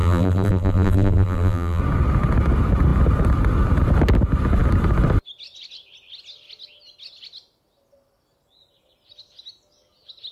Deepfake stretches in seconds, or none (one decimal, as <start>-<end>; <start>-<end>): 0.0-1.8